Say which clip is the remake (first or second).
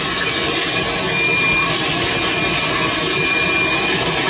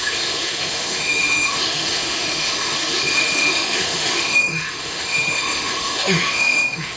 second